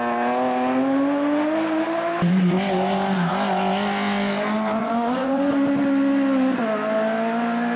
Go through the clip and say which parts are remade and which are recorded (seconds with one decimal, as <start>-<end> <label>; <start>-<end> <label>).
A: 0.0-4.8 recorded; 4.8-5.5 remade; 5.5-7.8 recorded